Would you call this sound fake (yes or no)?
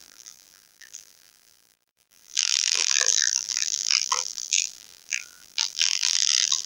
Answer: yes